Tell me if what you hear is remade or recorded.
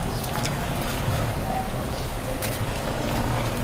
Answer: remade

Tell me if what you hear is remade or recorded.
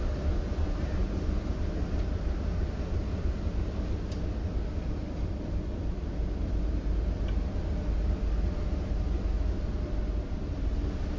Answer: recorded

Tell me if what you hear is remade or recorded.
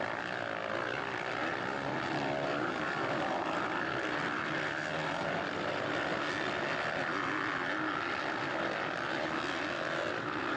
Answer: recorded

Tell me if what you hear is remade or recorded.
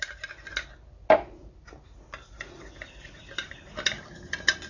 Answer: recorded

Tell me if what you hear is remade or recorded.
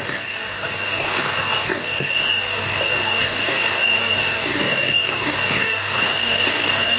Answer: remade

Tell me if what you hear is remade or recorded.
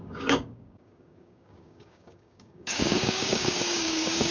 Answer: remade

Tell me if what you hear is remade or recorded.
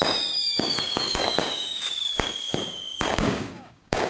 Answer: remade